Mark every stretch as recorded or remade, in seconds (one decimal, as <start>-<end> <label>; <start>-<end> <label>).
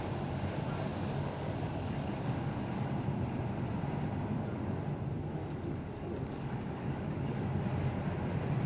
0.0-0.9 recorded; 0.9-2.9 remade; 2.9-5.4 recorded; 5.4-7.4 remade; 7.4-8.7 recorded